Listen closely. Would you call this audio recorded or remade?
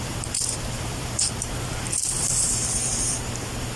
remade